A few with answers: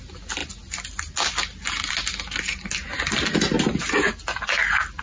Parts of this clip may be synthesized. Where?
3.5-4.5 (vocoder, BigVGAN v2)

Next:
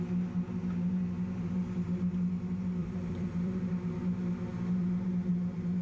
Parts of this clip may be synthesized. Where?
2.8-4.0 (vocoder, BigVGAN v2)

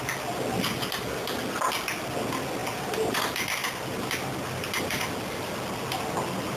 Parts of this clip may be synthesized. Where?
2.6-3.2 (vocoder, BigVGAN v2); 3.6-5.0